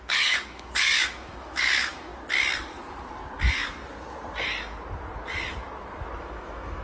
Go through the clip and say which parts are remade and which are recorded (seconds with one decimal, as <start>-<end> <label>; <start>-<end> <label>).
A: 0.0-2.1 remade; 2.1-6.2 recorded; 6.2-6.8 remade